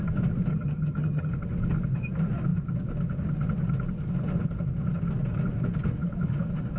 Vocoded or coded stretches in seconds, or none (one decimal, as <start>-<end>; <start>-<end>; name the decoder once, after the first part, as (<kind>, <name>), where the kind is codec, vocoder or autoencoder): 0.5-1.3 (vocoder, HiFi-GAN)